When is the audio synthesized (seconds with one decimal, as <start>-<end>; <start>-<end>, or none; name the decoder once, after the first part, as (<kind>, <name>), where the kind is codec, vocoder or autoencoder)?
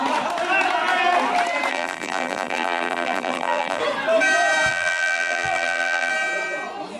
1.7-3.8 (vocoder, BigVGAN v2); 4.7-6.1